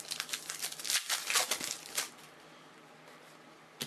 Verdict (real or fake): real